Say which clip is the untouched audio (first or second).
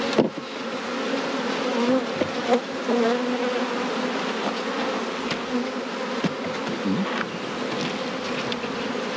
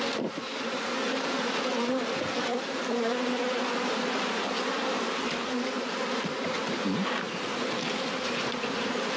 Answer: first